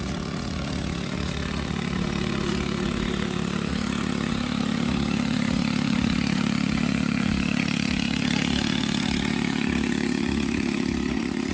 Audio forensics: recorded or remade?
remade